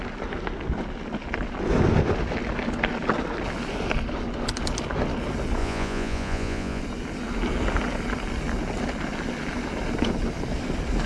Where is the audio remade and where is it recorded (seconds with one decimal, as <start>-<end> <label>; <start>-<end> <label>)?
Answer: 0.0-5.6 recorded; 5.6-6.8 remade; 6.8-11.1 recorded